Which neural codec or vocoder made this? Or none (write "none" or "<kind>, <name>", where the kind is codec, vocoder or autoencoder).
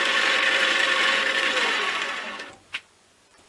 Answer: vocoder, Vocos